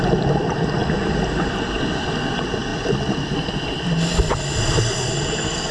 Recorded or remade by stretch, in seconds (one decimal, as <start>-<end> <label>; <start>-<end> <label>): 0.0-2.7 recorded; 2.7-3.9 remade; 3.9-5.7 recorded